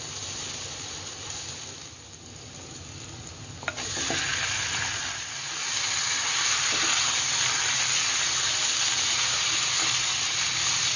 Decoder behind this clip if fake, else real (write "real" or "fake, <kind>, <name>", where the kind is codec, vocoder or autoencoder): real